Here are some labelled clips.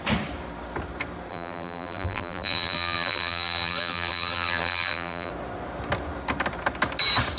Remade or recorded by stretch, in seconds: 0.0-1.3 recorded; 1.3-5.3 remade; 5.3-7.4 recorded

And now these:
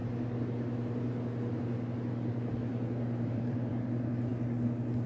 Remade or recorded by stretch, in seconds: 0.0-2.7 recorded; 2.7-3.7 remade; 3.7-5.1 recorded

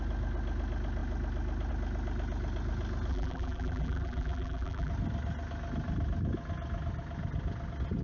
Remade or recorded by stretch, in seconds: 0.0-3.1 recorded; 3.1-4.9 remade; 4.9-8.0 recorded

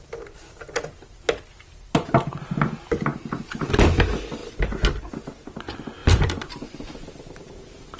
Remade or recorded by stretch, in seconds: 0.0-3.1 recorded; 3.1-3.7 remade; 3.7-6.0 recorded; 6.0-8.0 remade

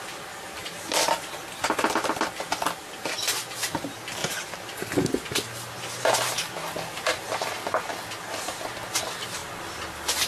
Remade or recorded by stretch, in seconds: 0.0-0.6 recorded; 0.6-1.9 remade; 1.9-10.3 recorded

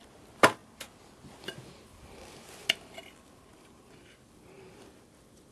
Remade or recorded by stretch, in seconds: 0.0-5.5 recorded

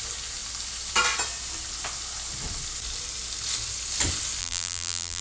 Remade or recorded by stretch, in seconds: 0.0-4.4 recorded; 4.4-5.2 remade